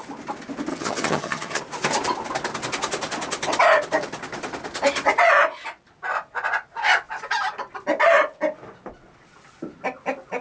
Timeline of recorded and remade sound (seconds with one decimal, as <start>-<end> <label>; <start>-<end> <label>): 0.0-0.7 recorded; 0.7-1.6 remade; 1.6-10.4 recorded

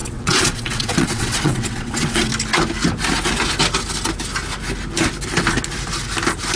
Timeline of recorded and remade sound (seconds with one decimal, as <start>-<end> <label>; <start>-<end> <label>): 0.0-2.3 remade; 2.3-6.6 recorded

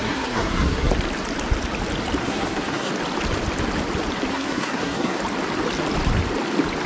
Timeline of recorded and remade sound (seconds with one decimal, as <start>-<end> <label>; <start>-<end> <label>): 0.0-0.9 remade; 0.9-2.2 recorded; 2.2-2.9 remade; 2.9-4.3 recorded; 4.3-5.2 remade; 5.2-6.9 recorded

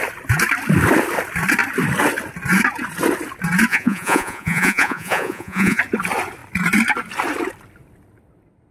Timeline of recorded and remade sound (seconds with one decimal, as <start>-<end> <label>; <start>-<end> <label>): 0.0-3.7 recorded; 3.7-5.8 remade; 5.8-8.7 recorded

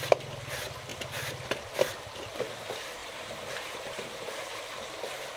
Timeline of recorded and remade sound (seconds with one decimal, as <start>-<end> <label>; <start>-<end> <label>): 0.0-3.0 recorded; 3.0-4.6 remade; 4.6-5.4 recorded